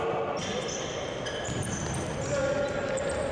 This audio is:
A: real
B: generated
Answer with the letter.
A